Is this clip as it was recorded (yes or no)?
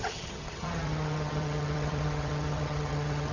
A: no